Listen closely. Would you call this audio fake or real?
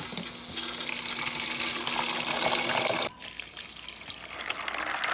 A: real